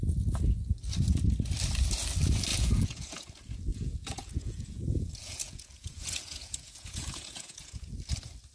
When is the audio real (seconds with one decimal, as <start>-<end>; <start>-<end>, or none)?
0.0-2.5; 3.3-3.7; 7.9-8.5